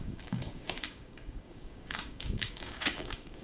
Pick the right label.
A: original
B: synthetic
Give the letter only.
B